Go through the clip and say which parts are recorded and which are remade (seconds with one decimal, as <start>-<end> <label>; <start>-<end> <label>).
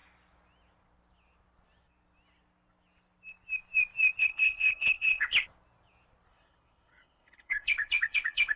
0.0-4.2 recorded; 4.2-5.3 remade; 5.3-6.3 recorded; 6.3-8.6 remade